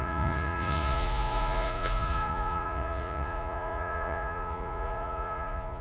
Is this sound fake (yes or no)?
yes